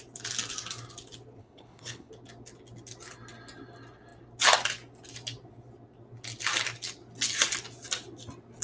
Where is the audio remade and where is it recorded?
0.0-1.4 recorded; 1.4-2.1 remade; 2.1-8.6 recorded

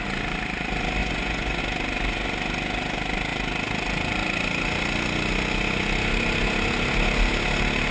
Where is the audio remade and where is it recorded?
0.0-1.0 recorded; 1.0-1.6 remade; 1.6-7.9 recorded

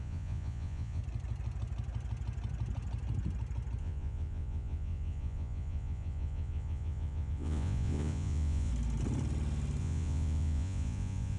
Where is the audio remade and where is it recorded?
0.0-1.0 remade; 1.0-3.8 recorded; 3.8-8.7 remade; 8.7-9.8 recorded; 9.8-11.4 remade

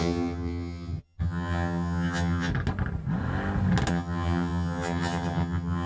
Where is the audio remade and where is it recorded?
0.0-2.5 remade; 2.5-3.9 recorded; 3.9-5.9 remade

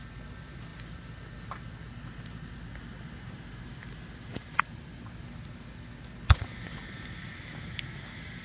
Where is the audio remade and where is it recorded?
0.0-8.4 recorded

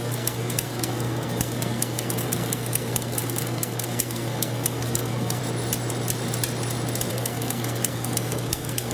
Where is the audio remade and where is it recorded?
0.0-5.4 remade; 5.4-7.1 recorded; 7.1-8.9 remade

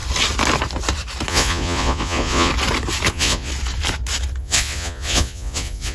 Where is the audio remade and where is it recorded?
0.0-1.3 recorded; 1.3-2.5 remade; 2.5-3.1 recorded; 3.1-3.5 remade; 3.5-4.4 recorded; 4.4-5.9 remade